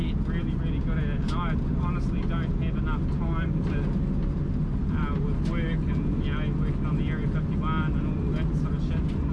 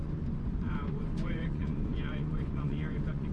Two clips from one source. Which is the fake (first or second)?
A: second